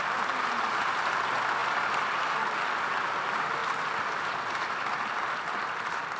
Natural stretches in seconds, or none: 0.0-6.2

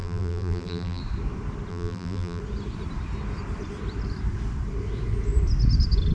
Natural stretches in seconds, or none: 1.0-1.7; 2.4-6.1

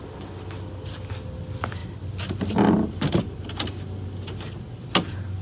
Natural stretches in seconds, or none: 0.0-5.4

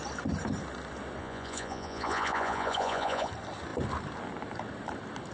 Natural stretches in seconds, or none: 0.0-1.2; 3.3-5.3

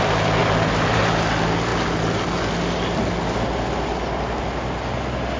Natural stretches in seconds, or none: 0.0-0.4; 1.0-5.4

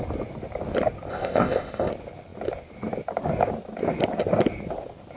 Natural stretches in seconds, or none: 0.0-1.1; 1.9-5.2

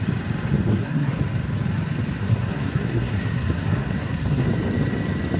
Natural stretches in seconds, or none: 0.0-0.7; 1.2-2.2; 4.5-5.4